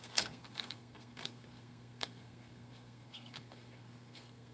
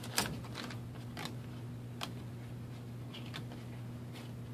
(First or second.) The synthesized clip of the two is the first